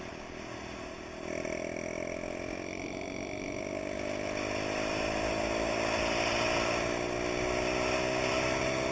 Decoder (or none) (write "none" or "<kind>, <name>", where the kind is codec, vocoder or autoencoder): none